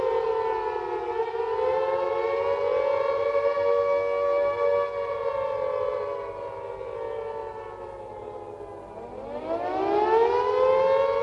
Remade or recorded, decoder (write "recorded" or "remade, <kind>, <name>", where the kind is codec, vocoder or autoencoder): recorded